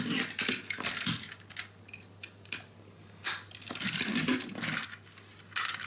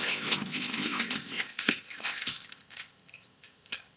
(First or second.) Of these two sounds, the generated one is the second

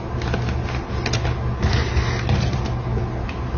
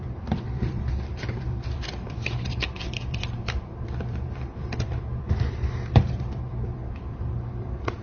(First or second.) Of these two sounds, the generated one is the second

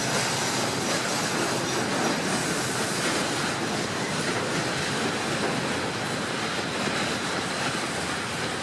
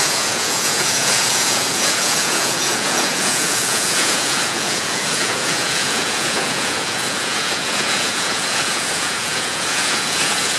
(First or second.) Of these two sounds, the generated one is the second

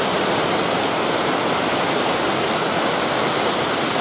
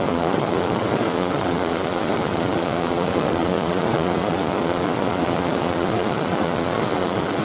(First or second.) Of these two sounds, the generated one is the second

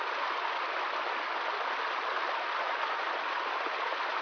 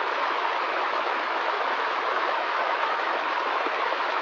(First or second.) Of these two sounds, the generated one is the second